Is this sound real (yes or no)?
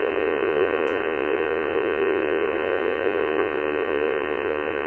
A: no